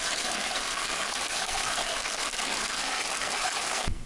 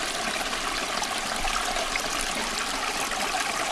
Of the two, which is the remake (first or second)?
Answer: first